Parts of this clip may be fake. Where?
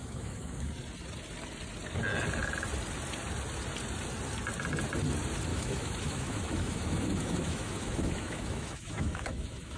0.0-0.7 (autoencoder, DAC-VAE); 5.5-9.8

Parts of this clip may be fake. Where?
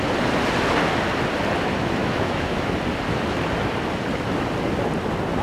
2.0-2.7 (autoencoder, DAC-VAE)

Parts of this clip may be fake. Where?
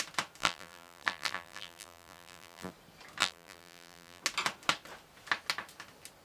0.4-2.7 (vocoder, BigVGAN v2); 3.2-4.2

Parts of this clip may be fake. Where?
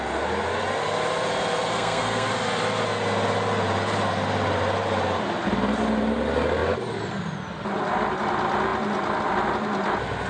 1.7-2.3 (codec, SNAC)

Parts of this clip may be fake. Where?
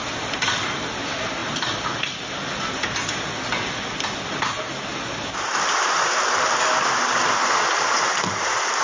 none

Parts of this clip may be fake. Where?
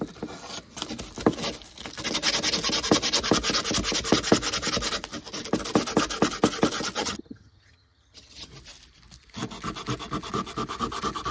7.0-8.5 (vocoder, HiFi-GAN)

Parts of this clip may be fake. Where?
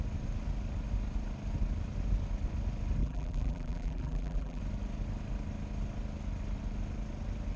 3.0-4.6 (vocoder, BigVGAN v2)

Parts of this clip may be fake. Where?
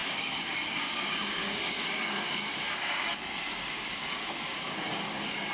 0.0-5.5 (codec, DAC)